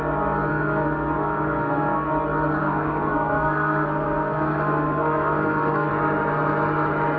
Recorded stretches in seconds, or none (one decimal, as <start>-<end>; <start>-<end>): 0.0-0.5; 2.1-2.6; 5.9-7.2